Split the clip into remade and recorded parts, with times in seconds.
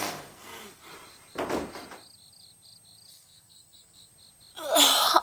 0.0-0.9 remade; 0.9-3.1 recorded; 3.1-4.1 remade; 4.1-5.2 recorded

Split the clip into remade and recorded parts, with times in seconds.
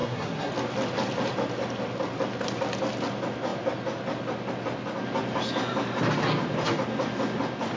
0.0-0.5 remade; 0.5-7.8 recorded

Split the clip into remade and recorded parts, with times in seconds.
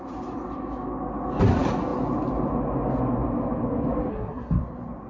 0.0-4.1 recorded; 4.1-4.6 remade; 4.6-5.1 recorded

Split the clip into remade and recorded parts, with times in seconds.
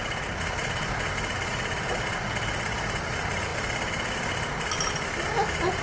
0.0-5.8 recorded